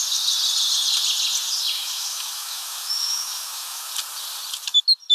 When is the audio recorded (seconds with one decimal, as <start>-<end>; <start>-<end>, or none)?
0.0-1.8; 3.9-5.1